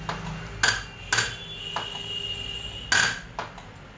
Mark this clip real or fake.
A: real